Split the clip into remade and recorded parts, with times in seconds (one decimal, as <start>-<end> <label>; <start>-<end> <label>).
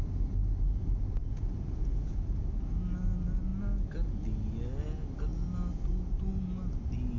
0.0-1.2 recorded; 1.2-2.2 remade; 2.2-7.2 recorded